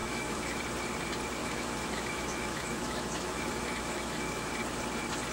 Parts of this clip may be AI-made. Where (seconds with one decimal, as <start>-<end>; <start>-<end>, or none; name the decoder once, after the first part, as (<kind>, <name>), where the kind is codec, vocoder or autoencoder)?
0.0-0.6 (autoencoder, DAC-VAE); 1.4-4.5